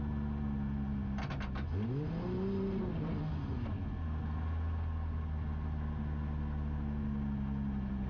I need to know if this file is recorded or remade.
recorded